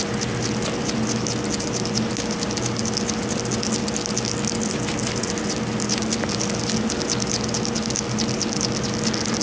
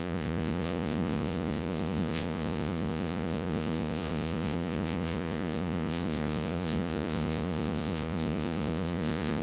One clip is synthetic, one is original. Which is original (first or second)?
first